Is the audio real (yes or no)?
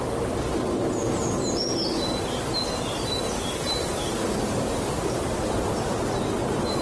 yes